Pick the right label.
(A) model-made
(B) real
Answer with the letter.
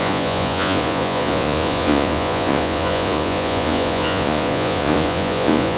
A